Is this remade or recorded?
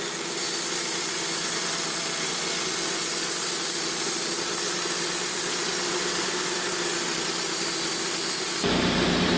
remade